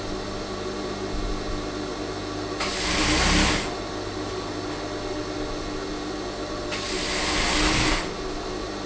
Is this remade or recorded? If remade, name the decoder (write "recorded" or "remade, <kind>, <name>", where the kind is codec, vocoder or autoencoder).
recorded